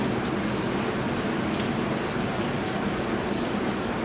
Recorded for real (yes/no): yes